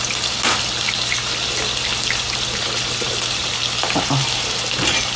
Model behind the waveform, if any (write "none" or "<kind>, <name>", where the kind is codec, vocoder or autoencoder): none